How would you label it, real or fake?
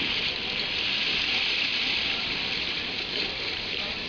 fake